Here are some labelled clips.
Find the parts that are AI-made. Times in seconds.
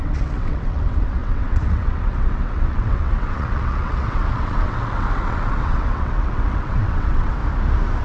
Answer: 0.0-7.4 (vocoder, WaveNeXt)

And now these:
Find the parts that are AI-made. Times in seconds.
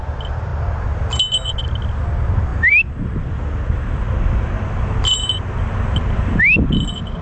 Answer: none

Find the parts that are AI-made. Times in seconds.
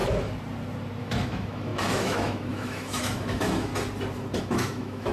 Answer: 1.0-3.7 (autoencoder, DAC-VAE); 4.4-5.1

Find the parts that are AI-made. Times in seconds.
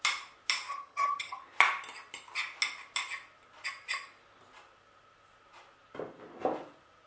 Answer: 0.7-1.4 (vocoder, HiFi-GAN)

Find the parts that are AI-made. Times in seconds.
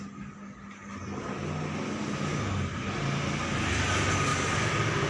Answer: none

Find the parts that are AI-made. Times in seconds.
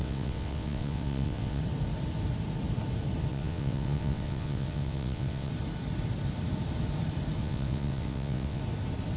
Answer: 0.0-1.6 (vocoder, WaveNeXt); 3.3-5.5; 7.4-8.6